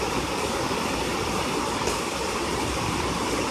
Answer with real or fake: fake